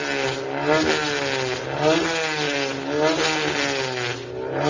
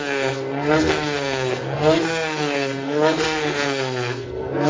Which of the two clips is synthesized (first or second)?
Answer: second